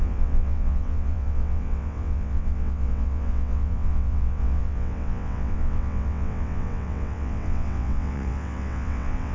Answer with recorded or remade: remade